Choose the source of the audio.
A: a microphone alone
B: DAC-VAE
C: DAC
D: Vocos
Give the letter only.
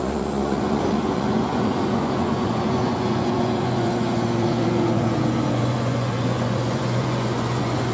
D